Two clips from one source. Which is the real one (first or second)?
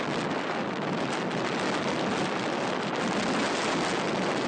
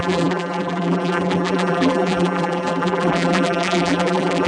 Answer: first